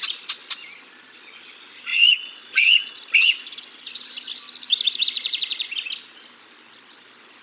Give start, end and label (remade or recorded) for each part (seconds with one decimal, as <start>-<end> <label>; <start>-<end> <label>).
0.0-1.9 recorded; 1.9-3.0 remade; 3.0-7.4 recorded